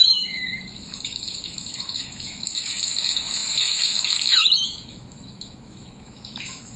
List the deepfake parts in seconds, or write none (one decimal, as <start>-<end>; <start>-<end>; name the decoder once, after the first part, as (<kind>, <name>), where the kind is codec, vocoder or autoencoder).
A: 0.0-6.8 (autoencoder, DAC-VAE)